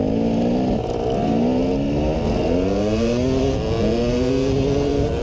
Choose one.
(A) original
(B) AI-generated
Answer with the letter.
A